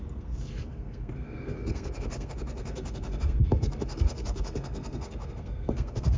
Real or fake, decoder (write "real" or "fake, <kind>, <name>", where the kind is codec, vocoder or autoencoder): fake, codec, SNAC